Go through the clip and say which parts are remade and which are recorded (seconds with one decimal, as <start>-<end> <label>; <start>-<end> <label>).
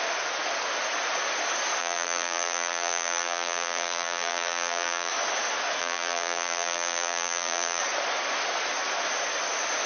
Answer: 0.0-1.8 recorded; 1.8-5.1 remade; 5.1-5.8 recorded; 5.8-7.8 remade; 7.8-9.9 recorded